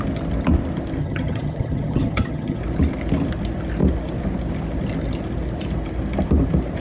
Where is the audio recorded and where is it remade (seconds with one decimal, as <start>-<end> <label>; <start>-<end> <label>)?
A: 0.0-1.0 recorded; 1.0-2.6 remade; 2.6-6.8 recorded